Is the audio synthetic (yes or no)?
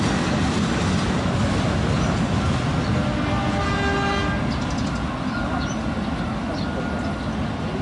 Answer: no